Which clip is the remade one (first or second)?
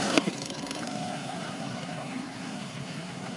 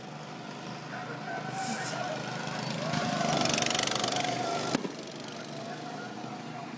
first